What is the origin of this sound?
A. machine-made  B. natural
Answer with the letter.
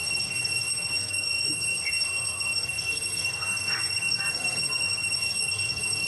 A